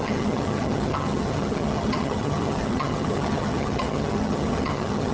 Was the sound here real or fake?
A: fake